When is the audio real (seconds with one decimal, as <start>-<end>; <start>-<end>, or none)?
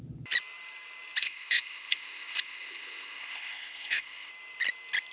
0.0-1.2; 4.3-5.1